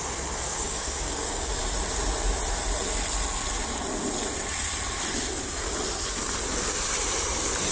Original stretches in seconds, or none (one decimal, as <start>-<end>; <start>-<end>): 0.0-0.5; 1.5-7.7